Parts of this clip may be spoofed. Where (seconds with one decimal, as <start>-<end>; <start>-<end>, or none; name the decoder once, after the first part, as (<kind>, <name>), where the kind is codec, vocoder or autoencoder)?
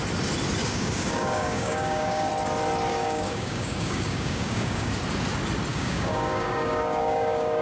0.6-2.3 (codec, DAC); 2.9-4.9; 5.7-7.6